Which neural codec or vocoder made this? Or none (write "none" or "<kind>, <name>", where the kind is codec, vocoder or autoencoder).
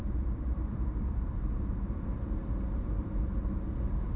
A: vocoder, BigVGAN v2